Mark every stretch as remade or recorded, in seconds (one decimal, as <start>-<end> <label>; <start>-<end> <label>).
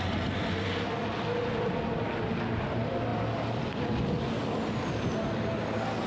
0.0-6.1 recorded